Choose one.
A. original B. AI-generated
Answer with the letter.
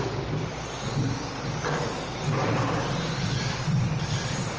A